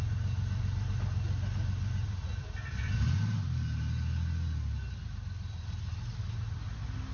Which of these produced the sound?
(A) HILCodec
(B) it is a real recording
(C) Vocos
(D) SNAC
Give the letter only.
B